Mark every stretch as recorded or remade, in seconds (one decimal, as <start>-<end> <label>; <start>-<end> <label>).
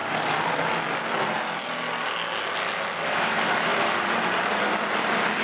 0.0-5.4 recorded